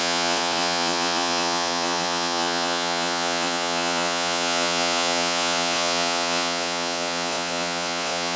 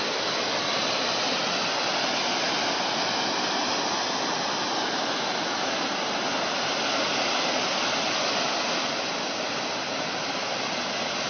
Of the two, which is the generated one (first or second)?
first